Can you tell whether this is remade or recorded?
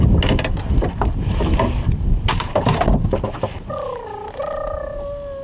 recorded